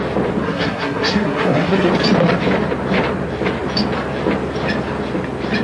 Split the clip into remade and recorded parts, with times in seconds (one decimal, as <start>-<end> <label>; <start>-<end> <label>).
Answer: 0.0-0.4 recorded; 0.4-1.9 remade; 1.9-5.6 recorded